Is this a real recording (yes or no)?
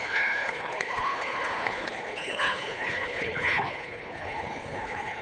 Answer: no